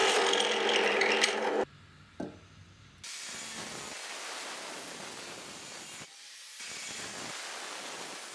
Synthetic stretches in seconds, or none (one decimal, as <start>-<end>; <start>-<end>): none